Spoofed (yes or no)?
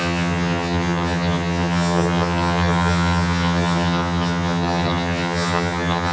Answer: yes